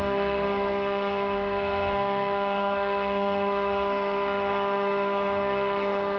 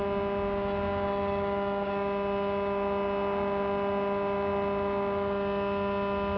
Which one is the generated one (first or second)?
first